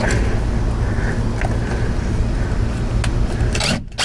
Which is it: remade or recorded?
recorded